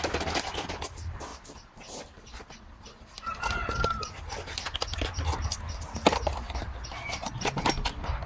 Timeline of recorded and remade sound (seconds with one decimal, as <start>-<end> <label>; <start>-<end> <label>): 0.0-8.3 recorded